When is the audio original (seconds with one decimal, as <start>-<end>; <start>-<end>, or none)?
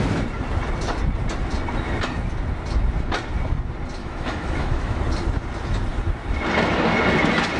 0.0-4.0; 5.0-7.6